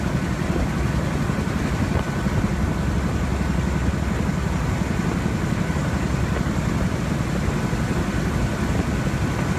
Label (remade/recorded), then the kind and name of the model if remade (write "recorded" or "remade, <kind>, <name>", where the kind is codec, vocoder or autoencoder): recorded